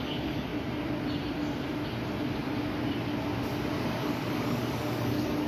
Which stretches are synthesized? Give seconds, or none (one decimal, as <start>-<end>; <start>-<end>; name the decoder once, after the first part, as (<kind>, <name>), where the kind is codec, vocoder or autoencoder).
0.0-0.5 (codec, DAC); 3.7-5.5